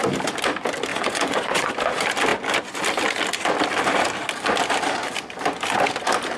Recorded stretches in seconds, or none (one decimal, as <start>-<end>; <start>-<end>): 0.0-0.9; 1.7-6.4